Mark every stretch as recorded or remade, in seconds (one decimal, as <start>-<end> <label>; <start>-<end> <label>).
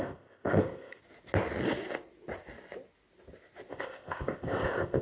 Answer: 0.0-1.0 remade; 1.0-3.7 recorded; 3.7-5.0 remade